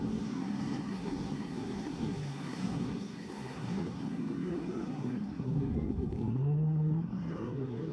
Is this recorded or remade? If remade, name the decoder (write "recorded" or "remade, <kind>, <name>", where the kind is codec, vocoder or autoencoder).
remade, codec, SNAC